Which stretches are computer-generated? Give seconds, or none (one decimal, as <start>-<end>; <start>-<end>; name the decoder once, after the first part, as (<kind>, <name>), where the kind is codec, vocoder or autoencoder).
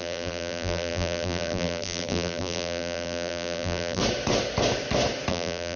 0.0-4.0 (vocoder, BigVGAN v2); 5.3-5.8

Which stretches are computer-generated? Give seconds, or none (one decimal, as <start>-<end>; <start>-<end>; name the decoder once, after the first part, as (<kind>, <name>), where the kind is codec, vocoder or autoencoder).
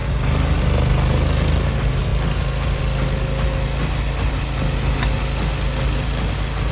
none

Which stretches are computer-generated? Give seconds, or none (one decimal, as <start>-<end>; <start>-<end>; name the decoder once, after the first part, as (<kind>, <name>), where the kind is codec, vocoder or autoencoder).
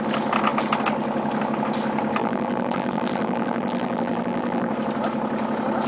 2.2-4.7 (vocoder, BigVGAN v2)